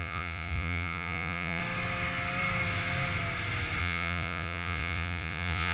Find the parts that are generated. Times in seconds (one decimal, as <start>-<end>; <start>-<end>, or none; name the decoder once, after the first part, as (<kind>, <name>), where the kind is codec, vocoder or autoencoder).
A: 0.0-1.6 (vocoder, Vocos); 3.8-5.7